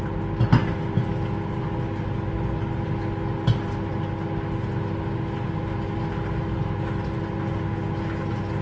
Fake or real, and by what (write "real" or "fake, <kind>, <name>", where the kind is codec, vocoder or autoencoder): real